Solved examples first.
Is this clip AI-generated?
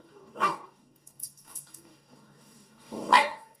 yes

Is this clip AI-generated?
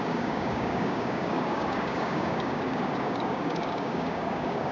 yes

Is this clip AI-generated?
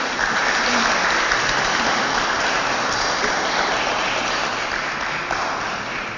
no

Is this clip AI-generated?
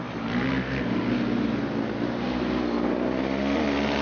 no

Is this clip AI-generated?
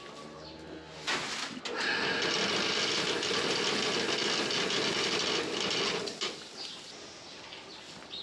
no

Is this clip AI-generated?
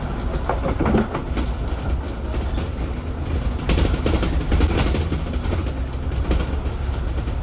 no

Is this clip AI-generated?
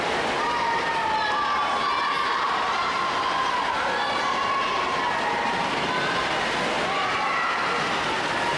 no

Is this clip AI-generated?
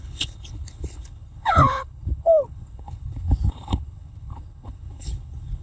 yes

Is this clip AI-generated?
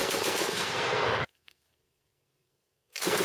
yes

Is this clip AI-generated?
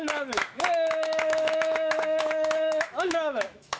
yes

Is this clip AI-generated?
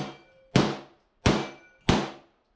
no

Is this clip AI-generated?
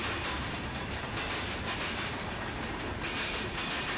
no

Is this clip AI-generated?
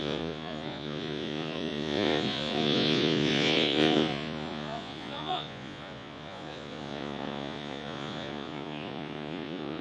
yes